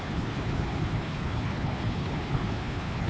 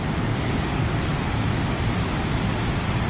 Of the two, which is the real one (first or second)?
second